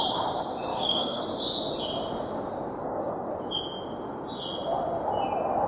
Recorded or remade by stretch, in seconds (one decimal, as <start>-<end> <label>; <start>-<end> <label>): 0.0-0.7 recorded; 0.7-1.2 remade; 1.2-2.8 recorded; 2.8-3.3 remade; 3.3-5.7 recorded